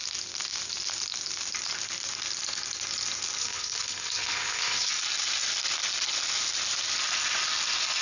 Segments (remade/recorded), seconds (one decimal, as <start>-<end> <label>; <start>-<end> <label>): 0.0-3.4 recorded; 3.4-4.9 remade; 4.9-8.0 recorded